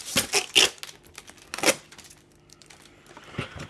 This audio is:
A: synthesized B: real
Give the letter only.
B